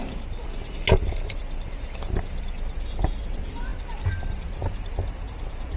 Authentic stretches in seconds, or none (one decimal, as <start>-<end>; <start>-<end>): 0.0-5.8